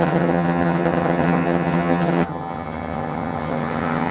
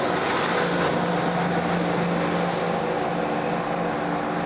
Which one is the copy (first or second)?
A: first